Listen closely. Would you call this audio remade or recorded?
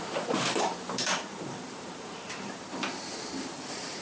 remade